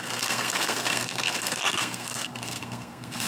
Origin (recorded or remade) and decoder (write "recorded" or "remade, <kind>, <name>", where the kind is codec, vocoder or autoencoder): remade, codec, SNAC